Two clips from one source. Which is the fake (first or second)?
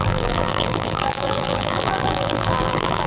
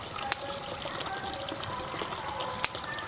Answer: first